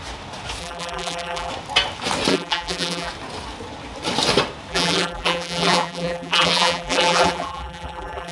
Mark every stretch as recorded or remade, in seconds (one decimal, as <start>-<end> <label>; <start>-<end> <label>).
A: 0.0-0.6 recorded; 0.6-1.5 remade; 1.5-2.3 recorded; 2.3-3.1 remade; 3.1-4.7 recorded; 4.7-8.3 remade